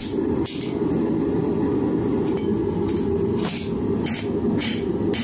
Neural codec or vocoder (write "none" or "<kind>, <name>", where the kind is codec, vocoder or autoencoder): none